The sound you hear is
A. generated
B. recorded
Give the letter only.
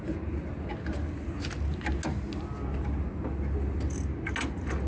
B